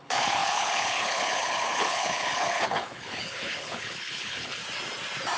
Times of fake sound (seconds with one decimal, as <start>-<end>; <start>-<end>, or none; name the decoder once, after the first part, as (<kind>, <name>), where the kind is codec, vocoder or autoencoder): 0.0-4.6 (codec, HILCodec)